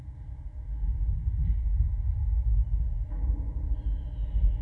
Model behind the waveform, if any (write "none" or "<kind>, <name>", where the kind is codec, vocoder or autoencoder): none